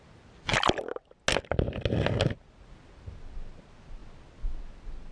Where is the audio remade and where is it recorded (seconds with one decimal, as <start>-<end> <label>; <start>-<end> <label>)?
0.0-5.1 recorded